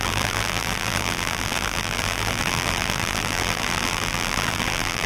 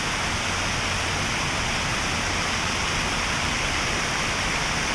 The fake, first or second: first